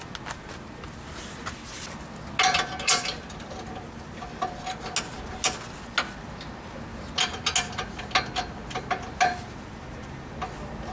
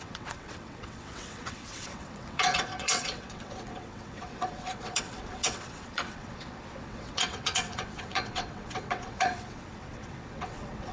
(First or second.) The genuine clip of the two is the first